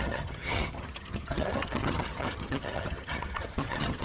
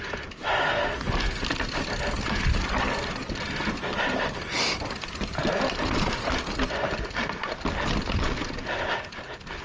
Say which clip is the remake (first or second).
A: first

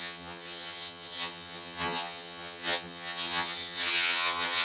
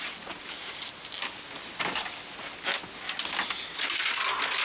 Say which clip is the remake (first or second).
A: first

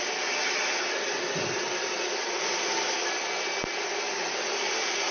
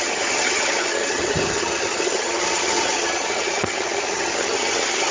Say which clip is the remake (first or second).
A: second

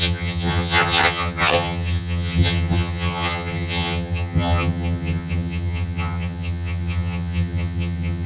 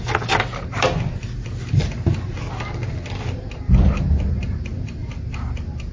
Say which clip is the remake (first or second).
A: first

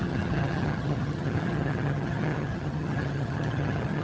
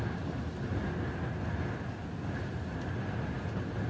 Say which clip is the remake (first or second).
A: first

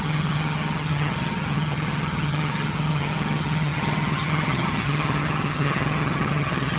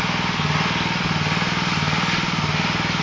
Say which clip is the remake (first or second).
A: first